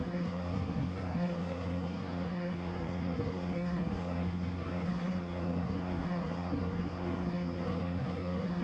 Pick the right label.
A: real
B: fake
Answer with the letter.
B